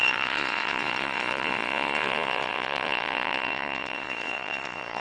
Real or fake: fake